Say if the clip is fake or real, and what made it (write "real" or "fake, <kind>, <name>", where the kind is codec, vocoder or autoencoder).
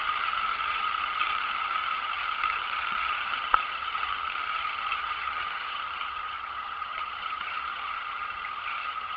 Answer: fake, vocoder, HiFi-GAN